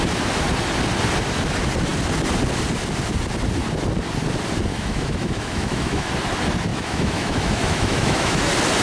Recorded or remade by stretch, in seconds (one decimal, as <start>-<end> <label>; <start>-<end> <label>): 0.0-4.7 recorded; 4.7-6.1 remade; 6.1-6.7 recorded; 6.7-8.4 remade; 8.4-8.8 recorded